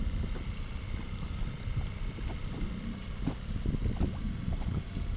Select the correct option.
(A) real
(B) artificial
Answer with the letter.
B